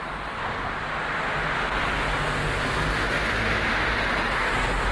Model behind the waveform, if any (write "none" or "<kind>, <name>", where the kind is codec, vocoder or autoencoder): none